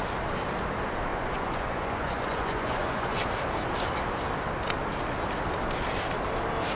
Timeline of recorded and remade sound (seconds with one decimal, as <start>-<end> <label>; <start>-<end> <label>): 0.0-1.1 recorded; 1.1-3.2 remade; 3.2-6.8 recorded

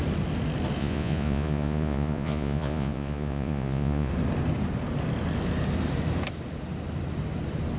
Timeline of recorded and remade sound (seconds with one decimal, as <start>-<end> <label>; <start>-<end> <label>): 0.0-0.8 recorded; 0.8-4.1 remade; 4.1-7.8 recorded

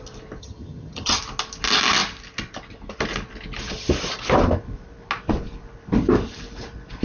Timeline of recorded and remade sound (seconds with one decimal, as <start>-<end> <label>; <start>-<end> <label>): 0.0-0.4 recorded; 0.4-1.2 remade; 1.2-7.0 recorded

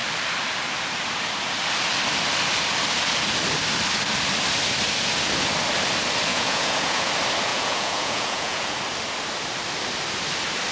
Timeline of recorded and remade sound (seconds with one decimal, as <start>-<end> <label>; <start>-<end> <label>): 0.0-6.3 recorded; 6.3-7.1 remade; 7.1-7.5 recorded; 7.5-8.7 remade; 8.7-10.7 recorded